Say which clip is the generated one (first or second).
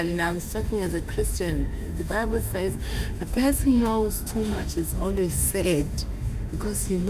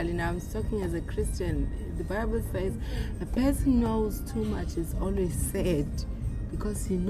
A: first